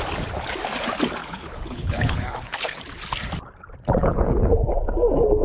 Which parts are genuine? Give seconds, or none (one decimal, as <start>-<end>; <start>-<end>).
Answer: 0.0-1.2; 2.8-4.0; 4.7-5.4